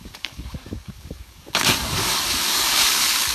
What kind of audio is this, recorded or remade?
remade